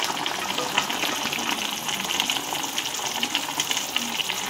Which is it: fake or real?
real